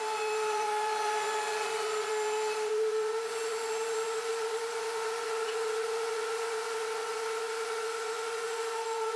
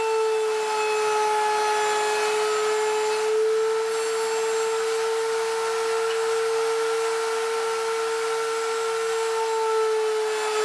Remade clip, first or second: first